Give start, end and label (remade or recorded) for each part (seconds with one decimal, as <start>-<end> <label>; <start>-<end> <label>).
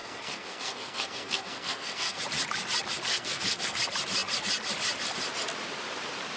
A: 0.0-2.2 remade; 2.2-3.1 recorded; 3.1-3.8 remade; 3.8-6.4 recorded